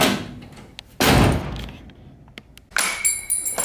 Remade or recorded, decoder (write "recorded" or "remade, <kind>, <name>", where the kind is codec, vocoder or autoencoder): recorded